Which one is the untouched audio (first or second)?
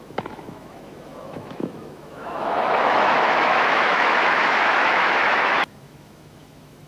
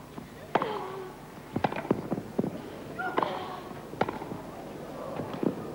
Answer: second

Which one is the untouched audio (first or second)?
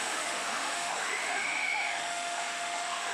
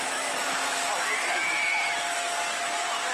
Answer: second